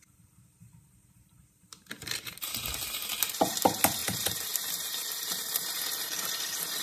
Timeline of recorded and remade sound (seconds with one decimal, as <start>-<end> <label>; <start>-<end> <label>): 0.0-6.8 remade